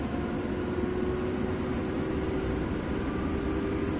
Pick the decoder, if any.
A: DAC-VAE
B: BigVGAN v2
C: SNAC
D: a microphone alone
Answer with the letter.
D